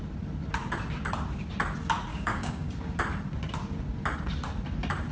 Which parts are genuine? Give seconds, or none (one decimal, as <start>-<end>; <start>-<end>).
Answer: 0.0-2.1; 2.7-5.1